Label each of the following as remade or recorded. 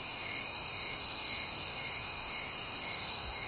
remade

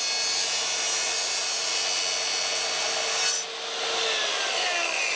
recorded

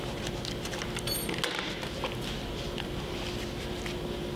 recorded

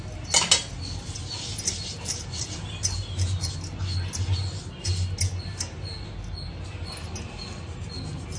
recorded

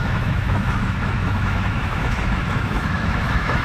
remade